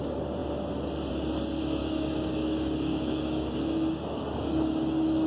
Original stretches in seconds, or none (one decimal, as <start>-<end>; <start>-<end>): 0.0-1.8